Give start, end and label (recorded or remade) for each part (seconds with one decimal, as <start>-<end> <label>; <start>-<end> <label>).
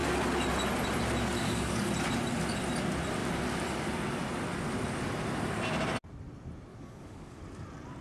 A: 0.0-1.4 recorded; 1.4-1.9 remade; 1.9-6.7 recorded; 6.7-7.4 remade; 7.4-8.0 recorded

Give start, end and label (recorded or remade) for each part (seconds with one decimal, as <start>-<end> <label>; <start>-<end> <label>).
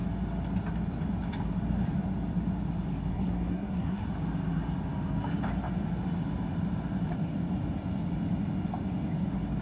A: 0.0-3.1 recorded; 3.1-4.1 remade; 4.1-9.6 recorded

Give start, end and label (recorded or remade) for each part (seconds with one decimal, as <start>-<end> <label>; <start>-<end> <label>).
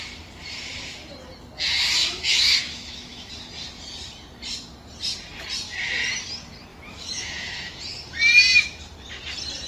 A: 0.0-2.0 recorded; 2.0-3.3 remade; 3.3-6.7 recorded; 6.7-7.8 remade; 7.8-9.7 recorded